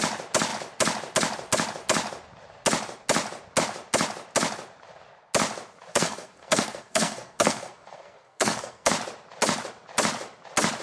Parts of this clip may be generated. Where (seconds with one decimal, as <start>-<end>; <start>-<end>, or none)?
5.9-8.9